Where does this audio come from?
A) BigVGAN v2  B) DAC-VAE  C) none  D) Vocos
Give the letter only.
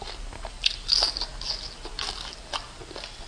C